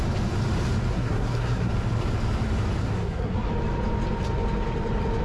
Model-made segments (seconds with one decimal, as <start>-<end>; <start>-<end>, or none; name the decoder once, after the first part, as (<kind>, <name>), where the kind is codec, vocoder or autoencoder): 0.9-1.7 (codec, SNAC); 2.8-3.5

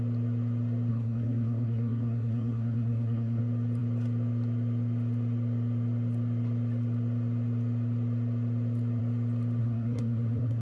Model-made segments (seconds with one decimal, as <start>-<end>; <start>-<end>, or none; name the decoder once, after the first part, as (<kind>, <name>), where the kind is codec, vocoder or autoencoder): 0.9-3.4 (codec, SNAC); 9.6-10.6

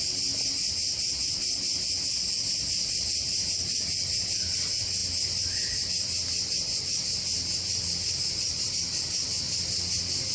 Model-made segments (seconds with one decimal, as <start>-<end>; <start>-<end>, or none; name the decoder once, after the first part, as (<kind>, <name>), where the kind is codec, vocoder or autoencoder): none